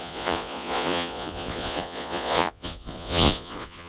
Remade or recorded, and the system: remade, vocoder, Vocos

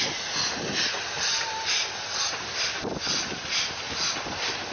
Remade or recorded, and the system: recorded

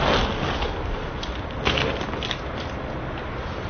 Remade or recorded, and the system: recorded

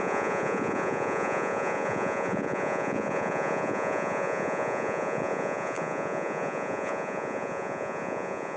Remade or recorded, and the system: remade, vocoder, Vocos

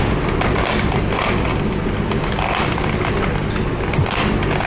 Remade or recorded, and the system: recorded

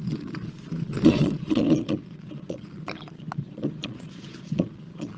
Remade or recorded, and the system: remade, vocoder, Vocos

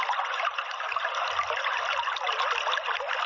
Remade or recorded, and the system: recorded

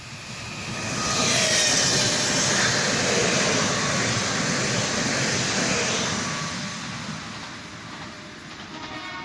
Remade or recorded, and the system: recorded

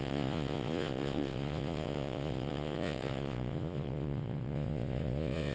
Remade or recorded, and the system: remade, vocoder, Vocos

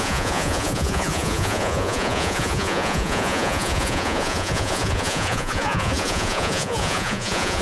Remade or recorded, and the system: remade, vocoder, Vocos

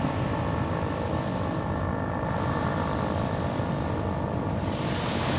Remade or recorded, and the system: recorded